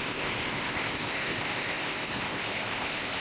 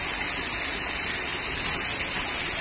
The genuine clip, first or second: second